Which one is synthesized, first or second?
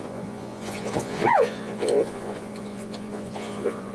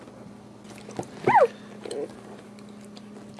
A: first